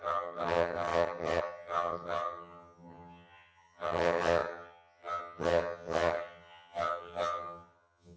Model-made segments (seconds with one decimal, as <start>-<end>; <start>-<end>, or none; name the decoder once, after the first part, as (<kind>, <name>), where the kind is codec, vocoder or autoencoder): 0.0-8.2 (vocoder, HiFi-GAN)